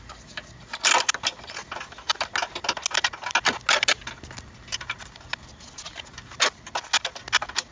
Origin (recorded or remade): recorded